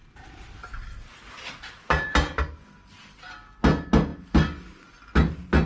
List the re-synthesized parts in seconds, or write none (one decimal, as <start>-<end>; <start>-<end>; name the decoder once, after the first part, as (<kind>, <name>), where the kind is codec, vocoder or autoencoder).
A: none